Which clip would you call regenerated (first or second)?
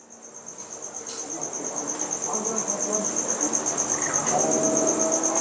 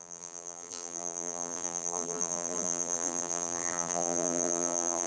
second